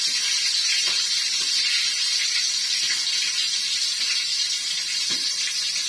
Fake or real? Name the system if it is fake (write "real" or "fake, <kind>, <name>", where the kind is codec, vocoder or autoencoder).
real